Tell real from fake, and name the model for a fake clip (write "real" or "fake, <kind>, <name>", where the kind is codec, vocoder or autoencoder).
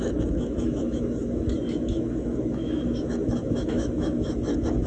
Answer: fake, autoencoder, DAC-VAE